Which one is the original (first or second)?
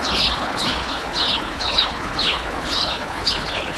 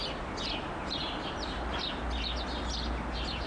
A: second